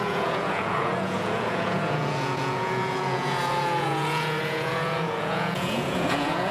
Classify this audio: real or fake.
fake